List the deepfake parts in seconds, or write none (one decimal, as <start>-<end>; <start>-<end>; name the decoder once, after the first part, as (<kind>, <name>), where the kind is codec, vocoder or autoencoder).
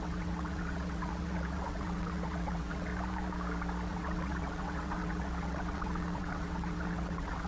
0.0-2.9 (vocoder, WaveNeXt); 3.9-7.5